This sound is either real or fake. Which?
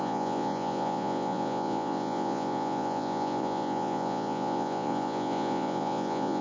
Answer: fake